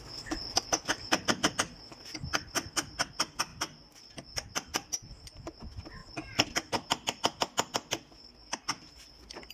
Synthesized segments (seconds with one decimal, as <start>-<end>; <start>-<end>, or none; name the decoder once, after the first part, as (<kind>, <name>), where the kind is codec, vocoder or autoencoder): none